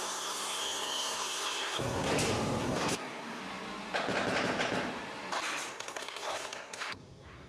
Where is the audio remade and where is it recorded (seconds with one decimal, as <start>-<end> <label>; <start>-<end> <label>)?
0.0-2.1 remade; 2.1-2.6 recorded; 2.6-3.4 remade; 3.4-5.7 recorded; 5.7-7.5 remade